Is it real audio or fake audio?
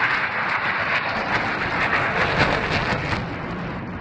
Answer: real